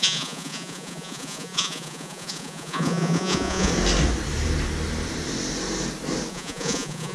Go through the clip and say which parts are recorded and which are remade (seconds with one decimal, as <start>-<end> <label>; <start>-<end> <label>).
0.0-3.7 remade; 3.7-6.3 recorded; 6.3-7.1 remade